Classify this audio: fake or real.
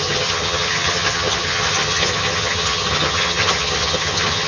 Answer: fake